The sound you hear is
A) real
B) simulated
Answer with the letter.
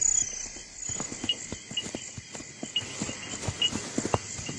A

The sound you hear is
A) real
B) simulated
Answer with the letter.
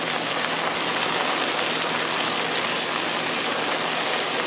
A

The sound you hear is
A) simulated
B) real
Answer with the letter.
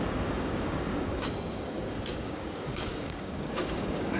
A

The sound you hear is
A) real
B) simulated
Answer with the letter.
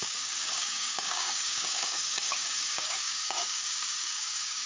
B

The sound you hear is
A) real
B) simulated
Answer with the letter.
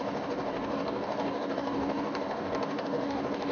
B